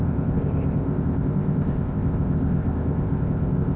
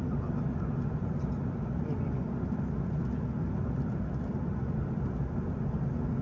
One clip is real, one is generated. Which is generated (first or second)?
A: first